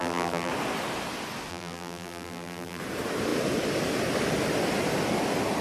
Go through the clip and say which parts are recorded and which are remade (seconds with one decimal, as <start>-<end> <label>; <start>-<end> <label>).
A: 0.0-0.5 remade; 0.5-1.5 recorded; 1.5-2.8 remade; 2.8-5.6 recorded